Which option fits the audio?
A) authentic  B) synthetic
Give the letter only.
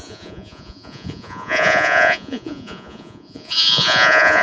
B